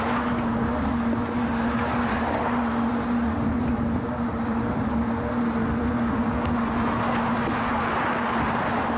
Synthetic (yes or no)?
no